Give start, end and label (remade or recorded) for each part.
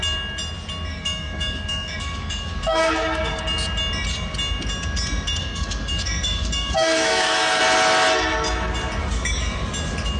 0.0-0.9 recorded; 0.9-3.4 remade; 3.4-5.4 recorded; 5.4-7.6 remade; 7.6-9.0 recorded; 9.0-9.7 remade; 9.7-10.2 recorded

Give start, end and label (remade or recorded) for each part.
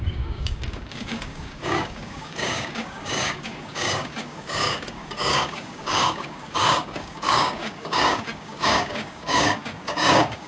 0.0-10.5 remade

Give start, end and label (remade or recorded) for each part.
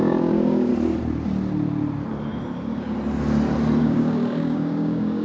0.0-0.7 remade; 0.7-3.8 recorded; 3.8-5.2 remade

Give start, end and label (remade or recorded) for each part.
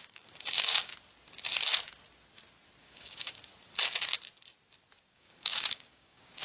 0.0-0.9 remade; 0.9-2.8 recorded; 2.8-3.5 remade; 3.5-5.0 recorded; 5.0-6.4 remade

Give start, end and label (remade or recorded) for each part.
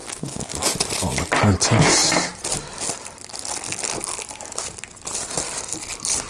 0.0-0.7 remade; 0.7-6.3 recorded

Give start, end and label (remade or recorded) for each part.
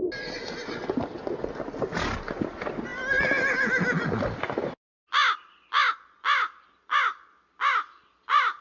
0.0-8.6 recorded